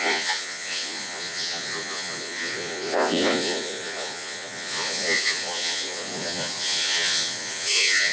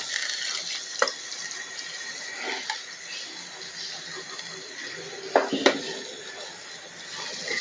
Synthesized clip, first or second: first